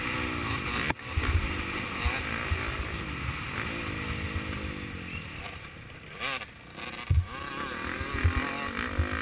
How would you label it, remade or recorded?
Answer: recorded